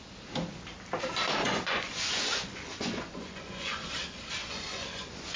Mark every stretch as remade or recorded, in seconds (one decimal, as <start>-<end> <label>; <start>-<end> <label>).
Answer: 0.0-1.4 recorded; 1.4-3.9 remade; 3.9-4.4 recorded; 4.4-5.4 remade